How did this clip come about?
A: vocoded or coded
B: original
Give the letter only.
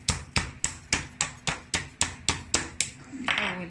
B